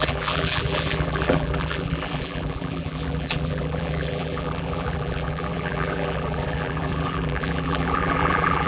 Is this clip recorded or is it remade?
remade